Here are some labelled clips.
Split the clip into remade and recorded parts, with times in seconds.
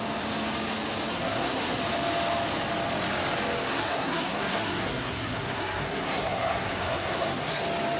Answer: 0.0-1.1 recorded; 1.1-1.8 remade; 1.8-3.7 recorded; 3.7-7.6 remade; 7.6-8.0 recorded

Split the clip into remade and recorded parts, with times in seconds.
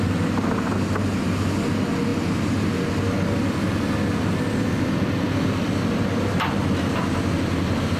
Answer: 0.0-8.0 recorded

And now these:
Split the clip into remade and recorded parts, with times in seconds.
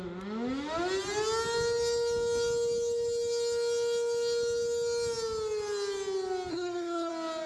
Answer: 0.0-6.5 recorded; 6.5-7.1 remade; 7.1-7.5 recorded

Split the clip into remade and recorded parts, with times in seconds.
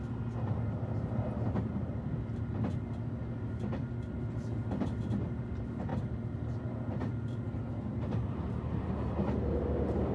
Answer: 0.0-10.1 recorded